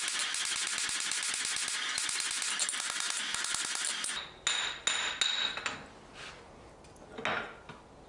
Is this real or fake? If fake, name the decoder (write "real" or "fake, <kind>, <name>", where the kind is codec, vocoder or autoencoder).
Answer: real